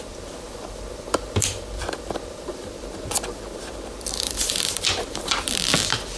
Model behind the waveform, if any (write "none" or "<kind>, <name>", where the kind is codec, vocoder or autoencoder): vocoder, BigVGAN v2